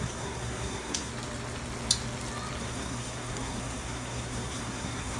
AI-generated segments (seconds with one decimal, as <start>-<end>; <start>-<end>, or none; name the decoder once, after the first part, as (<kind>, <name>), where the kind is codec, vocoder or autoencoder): 0.0-1.1 (codec, SNAC); 2.6-5.2